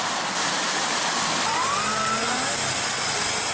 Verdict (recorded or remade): recorded